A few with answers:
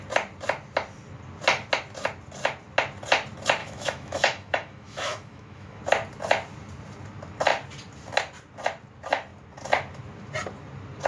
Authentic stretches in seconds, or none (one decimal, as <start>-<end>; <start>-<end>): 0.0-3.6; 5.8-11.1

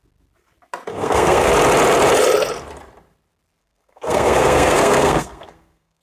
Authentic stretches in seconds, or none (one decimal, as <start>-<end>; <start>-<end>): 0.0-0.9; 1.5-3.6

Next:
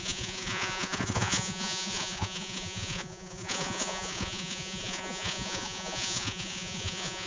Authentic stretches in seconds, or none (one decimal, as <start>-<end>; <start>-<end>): none

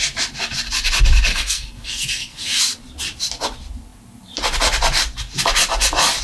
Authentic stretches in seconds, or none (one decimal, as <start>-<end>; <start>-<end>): 0.0-1.3; 2.6-6.2

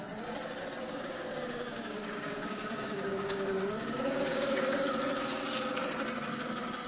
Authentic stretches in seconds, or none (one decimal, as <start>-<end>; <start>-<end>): 0.0-0.8; 4.9-6.9